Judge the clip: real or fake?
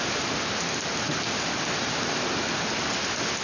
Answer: real